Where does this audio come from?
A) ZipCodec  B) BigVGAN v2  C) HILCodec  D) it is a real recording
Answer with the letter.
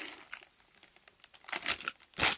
D